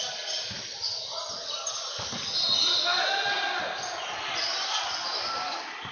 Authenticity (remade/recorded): recorded